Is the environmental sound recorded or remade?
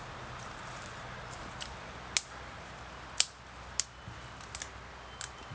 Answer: recorded